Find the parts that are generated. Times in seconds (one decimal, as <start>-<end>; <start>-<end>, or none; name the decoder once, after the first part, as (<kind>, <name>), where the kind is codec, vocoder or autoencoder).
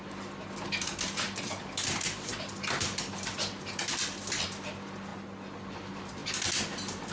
none